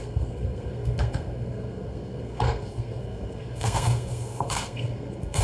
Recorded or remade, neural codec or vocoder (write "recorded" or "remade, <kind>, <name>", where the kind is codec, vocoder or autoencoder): remade, codec, SNAC